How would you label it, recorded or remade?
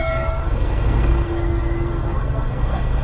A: remade